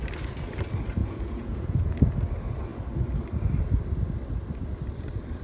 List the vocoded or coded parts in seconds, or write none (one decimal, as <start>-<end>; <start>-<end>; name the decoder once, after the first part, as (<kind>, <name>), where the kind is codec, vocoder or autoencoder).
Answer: 1.0-1.9 (vocoder, Vocos)